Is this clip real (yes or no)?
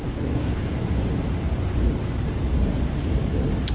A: yes